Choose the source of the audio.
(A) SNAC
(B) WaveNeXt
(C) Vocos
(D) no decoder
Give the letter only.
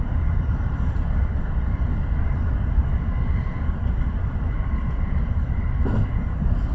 D